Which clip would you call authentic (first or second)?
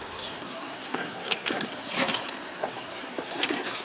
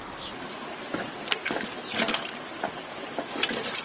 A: second